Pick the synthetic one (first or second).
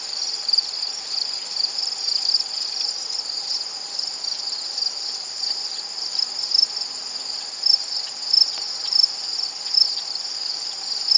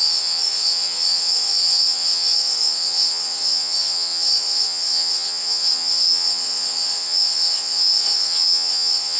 second